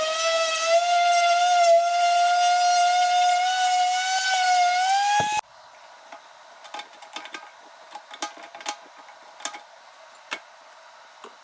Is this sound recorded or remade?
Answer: recorded